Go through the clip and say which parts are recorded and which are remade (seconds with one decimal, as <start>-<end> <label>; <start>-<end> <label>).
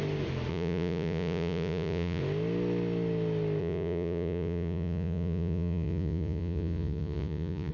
0.0-0.5 recorded; 0.5-2.2 remade; 2.2-3.6 recorded; 3.6-7.7 remade